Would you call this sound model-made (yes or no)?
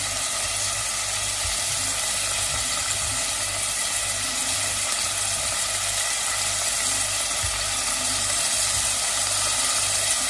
no